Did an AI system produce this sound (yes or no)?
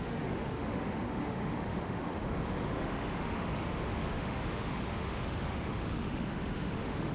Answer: yes